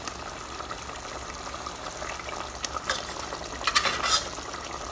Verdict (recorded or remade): recorded